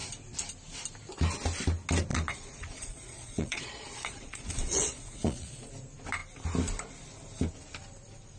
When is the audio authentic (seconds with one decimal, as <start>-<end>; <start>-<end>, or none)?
0.0-2.1; 5.7-8.4